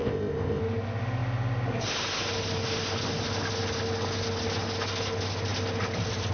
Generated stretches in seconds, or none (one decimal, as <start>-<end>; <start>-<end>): 0.0-0.6

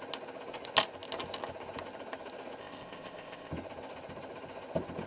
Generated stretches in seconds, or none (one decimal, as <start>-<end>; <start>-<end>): 2.6-3.5

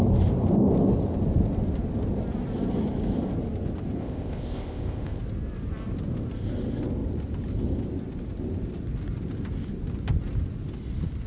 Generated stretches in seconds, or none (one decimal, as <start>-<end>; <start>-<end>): 4.0-5.2